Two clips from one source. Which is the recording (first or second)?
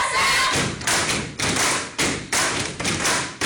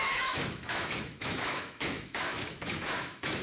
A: first